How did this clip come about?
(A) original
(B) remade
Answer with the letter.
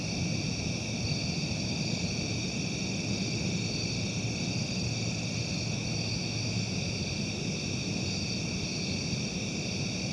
A